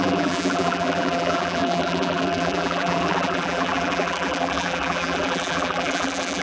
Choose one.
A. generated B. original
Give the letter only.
A